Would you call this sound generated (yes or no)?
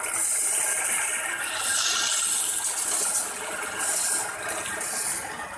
no